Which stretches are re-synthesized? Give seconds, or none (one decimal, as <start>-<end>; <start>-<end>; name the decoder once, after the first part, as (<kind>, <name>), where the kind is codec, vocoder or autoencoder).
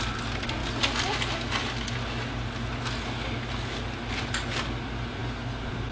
none